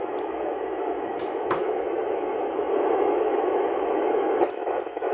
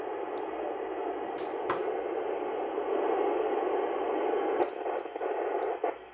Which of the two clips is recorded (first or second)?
second